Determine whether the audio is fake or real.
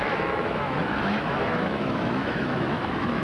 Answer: fake